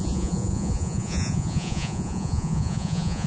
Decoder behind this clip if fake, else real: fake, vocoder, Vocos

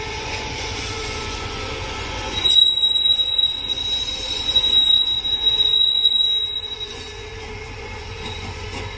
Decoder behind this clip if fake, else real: fake, vocoder, Vocos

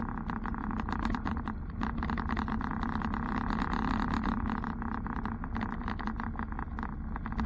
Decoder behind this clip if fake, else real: real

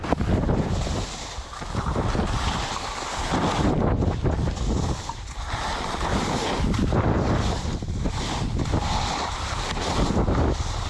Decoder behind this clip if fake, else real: real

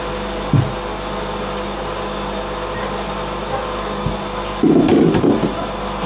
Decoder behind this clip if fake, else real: real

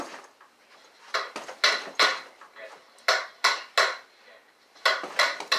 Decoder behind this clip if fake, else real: real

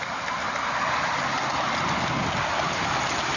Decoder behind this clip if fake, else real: real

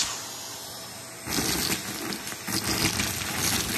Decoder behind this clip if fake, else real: real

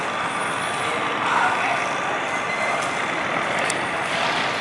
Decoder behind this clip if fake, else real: real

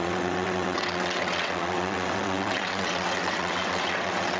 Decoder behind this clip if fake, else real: fake, vocoder, WaveNeXt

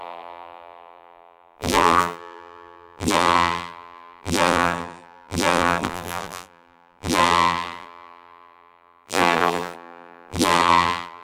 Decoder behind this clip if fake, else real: fake, vocoder, BigVGAN v2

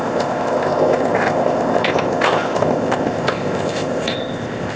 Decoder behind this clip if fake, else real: fake, codec, ZipCodec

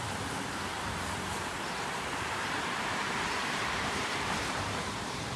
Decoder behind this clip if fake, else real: fake, vocoder, BigVGAN v2